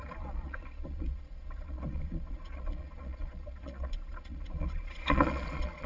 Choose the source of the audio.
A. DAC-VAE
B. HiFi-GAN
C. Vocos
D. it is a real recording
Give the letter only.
C